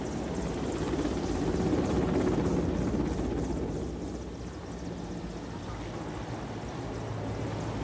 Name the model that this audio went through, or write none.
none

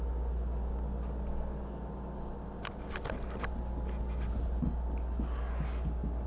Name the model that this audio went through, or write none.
none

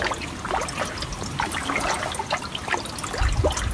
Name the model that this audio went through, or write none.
none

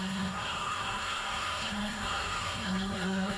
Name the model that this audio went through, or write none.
codec, SNAC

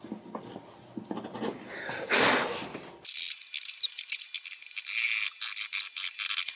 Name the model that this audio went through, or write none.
none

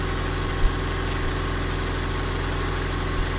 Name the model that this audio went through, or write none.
none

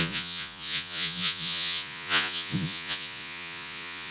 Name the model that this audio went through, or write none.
vocoder, Vocos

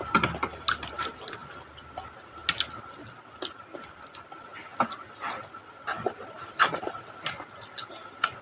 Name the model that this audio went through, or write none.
none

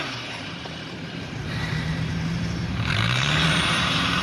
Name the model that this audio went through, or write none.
vocoder, BigVGAN v2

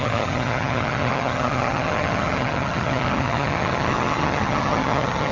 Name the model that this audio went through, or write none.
vocoder, HiFi-GAN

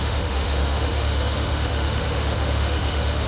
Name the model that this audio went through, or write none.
autoencoder, DAC-VAE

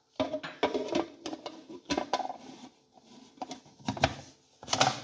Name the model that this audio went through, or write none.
none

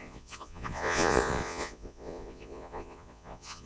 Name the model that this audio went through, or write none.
vocoder, Vocos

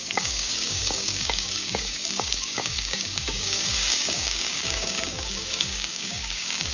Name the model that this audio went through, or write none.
codec, DAC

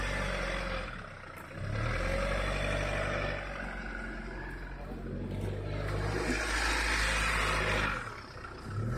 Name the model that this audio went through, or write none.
none